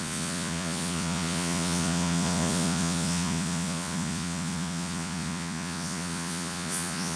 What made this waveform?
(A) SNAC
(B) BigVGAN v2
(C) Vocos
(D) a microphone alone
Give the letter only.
C